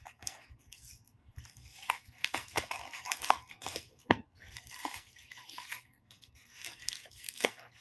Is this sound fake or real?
fake